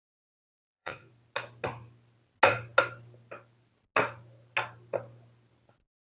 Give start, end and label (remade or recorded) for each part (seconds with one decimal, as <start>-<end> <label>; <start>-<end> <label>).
0.0-0.4 recorded; 0.4-1.1 remade; 1.1-6.0 recorded